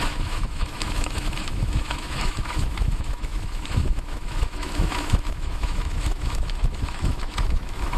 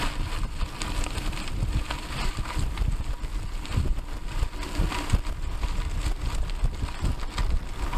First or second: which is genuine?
second